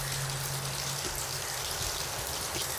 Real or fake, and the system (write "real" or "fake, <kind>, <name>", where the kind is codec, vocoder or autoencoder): real